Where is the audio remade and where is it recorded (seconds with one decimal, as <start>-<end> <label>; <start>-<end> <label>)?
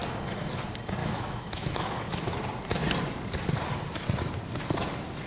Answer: 0.0-1.0 recorded; 1.0-2.3 remade; 2.3-5.3 recorded